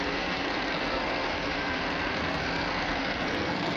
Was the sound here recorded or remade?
remade